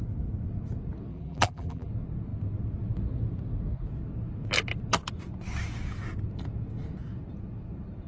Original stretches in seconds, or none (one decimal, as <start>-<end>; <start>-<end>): 0.0-1.1; 1.9-8.1